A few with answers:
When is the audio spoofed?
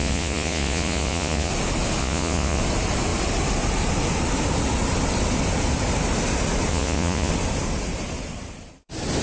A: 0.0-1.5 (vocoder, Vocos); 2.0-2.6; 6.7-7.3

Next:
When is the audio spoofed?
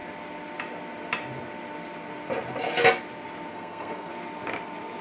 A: 3.5-4.1 (codec, SNAC)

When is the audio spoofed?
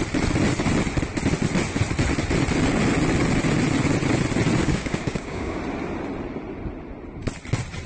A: 4.6-5.6 (codec, DAC)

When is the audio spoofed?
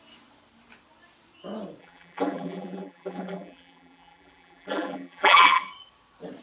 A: 1.8-5.6 (vocoder, BigVGAN v2)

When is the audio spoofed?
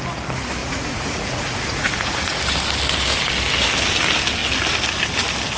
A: 0.6-2.4 (vocoder, Vocos)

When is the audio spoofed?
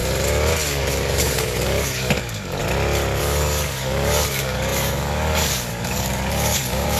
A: 0.7-2.6 (codec, DAC); 3.2-7.0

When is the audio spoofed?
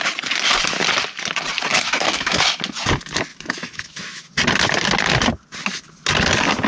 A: 1.7-2.4 (autoencoder, DAC-VAE); 3.3-4.3